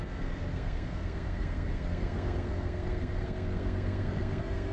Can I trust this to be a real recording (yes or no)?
no